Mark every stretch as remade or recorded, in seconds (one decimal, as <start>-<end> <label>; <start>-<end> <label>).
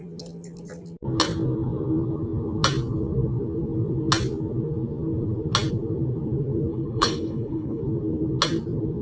0.0-6.7 recorded; 6.7-7.8 remade; 7.8-9.0 recorded